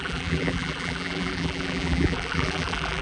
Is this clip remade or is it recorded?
remade